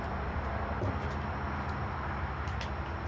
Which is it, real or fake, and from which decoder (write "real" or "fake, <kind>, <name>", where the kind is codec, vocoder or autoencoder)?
real